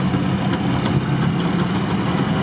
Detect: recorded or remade recorded